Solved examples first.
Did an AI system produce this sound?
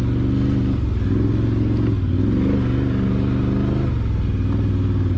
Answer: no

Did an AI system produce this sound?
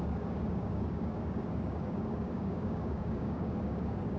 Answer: yes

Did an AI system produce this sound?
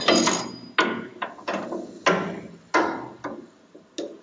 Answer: no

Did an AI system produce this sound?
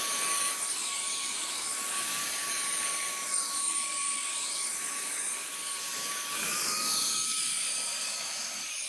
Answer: yes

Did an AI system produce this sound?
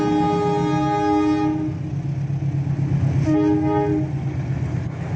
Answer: no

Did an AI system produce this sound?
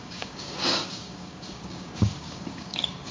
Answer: yes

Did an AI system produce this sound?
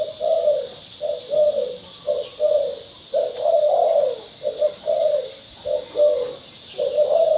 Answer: no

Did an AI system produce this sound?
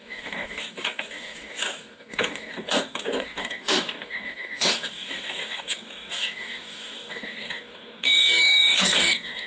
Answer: yes